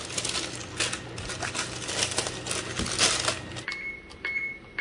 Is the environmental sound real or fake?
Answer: real